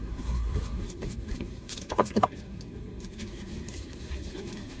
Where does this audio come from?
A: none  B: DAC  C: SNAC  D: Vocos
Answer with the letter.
C